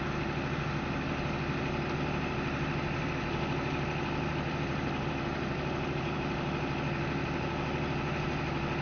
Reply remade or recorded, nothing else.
recorded